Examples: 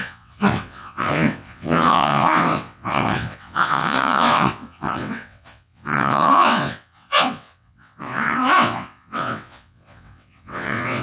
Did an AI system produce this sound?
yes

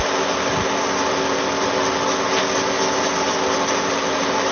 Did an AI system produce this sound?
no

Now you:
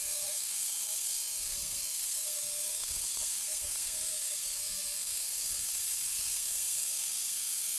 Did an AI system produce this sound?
yes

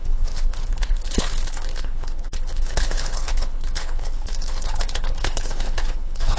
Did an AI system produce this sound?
yes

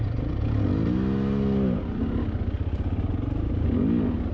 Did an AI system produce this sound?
no